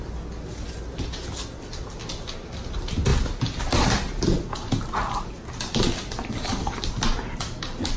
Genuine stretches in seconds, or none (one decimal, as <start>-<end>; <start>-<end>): 0.0-8.0